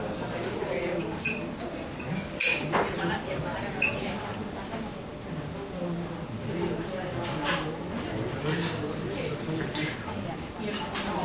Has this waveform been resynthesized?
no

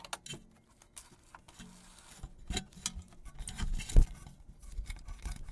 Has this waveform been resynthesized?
no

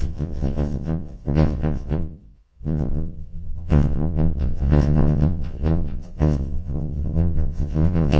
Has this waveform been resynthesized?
yes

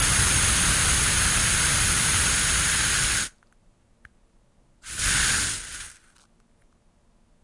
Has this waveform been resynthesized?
no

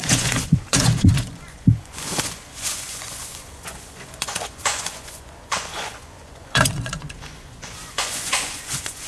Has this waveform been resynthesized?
yes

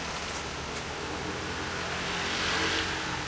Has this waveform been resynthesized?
no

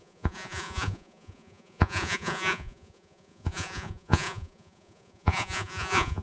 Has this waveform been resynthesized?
yes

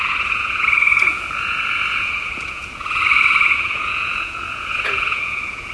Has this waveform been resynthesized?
yes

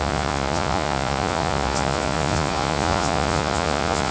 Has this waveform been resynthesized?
yes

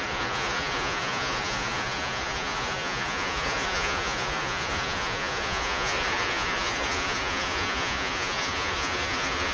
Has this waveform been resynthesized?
yes